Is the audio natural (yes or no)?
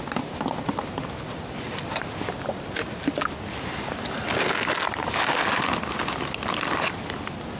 yes